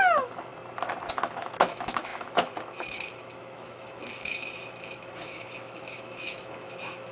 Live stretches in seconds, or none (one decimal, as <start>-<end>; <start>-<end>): 0.5-1.1